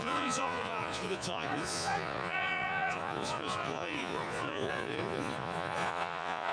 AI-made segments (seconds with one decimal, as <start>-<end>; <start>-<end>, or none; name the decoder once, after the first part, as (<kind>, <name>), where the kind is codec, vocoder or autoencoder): 0.0-6.5 (vocoder, Vocos)